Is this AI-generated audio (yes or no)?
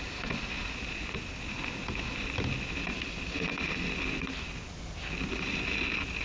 no